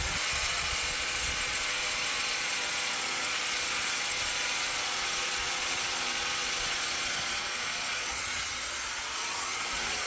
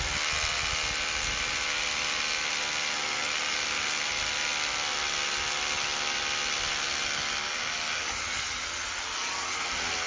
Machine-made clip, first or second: first